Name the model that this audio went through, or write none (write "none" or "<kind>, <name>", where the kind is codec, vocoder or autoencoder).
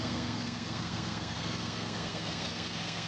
codec, SNAC